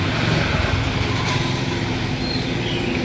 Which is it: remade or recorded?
recorded